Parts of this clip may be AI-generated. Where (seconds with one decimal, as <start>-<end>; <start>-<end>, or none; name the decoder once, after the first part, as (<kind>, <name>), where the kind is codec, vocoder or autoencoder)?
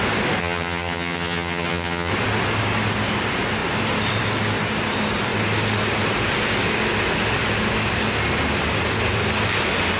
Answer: 0.4-2.1 (vocoder, HiFi-GAN)